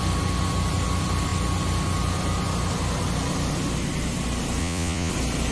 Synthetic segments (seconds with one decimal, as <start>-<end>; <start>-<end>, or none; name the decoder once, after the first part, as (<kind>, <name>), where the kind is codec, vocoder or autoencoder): 4.6-5.1 (vocoder, Vocos)